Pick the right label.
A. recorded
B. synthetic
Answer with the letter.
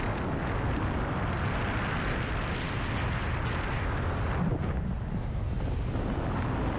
A